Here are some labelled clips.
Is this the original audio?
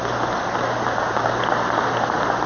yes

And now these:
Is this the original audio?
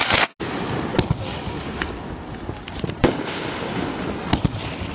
yes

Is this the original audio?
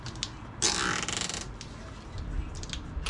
yes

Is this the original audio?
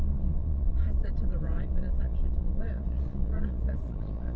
no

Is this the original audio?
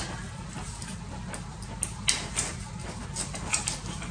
yes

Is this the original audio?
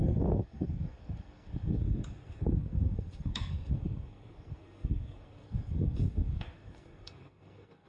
no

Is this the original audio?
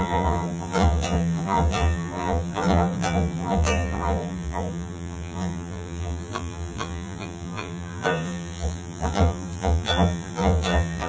no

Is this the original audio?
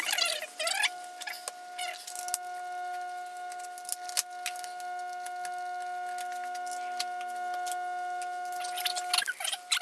yes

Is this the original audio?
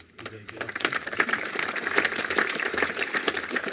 no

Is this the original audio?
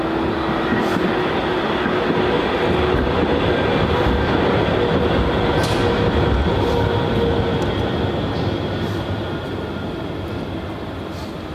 yes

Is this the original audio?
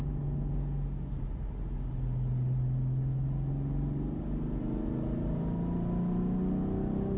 yes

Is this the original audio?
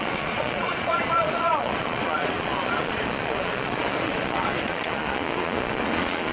no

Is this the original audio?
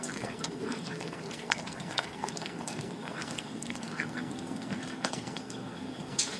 no